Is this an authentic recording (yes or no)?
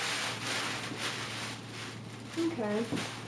yes